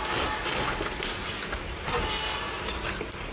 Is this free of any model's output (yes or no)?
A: yes